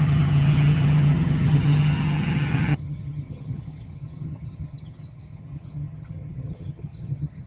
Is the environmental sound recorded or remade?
remade